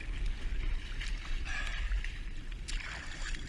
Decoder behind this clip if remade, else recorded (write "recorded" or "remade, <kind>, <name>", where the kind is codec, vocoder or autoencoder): recorded